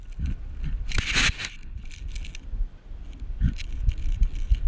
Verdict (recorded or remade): recorded